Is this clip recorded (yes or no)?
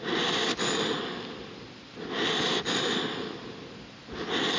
yes